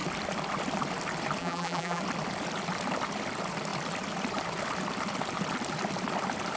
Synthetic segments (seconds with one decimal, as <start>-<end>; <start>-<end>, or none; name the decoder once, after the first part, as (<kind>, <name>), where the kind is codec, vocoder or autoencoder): 1.4-2.0 (vocoder, BigVGAN v2)